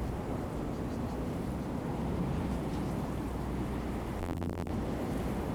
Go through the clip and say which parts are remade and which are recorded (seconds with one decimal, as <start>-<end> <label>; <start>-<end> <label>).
0.0-4.2 recorded; 4.2-4.7 remade; 4.7-5.5 recorded